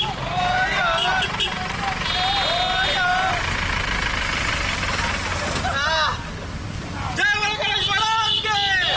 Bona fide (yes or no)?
yes